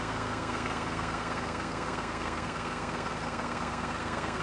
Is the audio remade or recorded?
remade